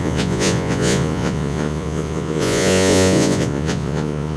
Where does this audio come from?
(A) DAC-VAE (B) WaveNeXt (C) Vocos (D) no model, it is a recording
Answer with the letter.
C